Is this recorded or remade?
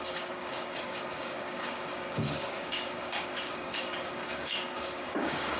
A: remade